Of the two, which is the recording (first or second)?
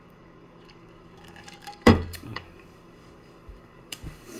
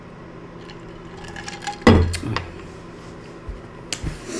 second